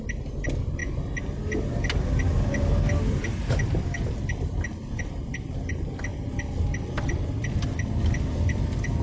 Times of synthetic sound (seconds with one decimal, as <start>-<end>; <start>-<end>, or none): none